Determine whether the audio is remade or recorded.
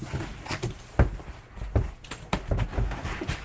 recorded